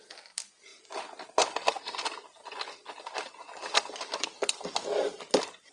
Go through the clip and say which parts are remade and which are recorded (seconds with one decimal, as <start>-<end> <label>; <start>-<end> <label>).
0.0-5.7 recorded